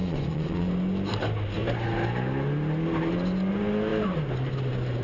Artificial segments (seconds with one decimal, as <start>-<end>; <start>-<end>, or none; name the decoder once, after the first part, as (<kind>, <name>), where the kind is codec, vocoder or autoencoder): 0.0-0.7 (vocoder, Vocos)